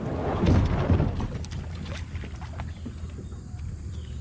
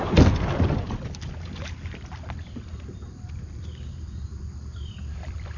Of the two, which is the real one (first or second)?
first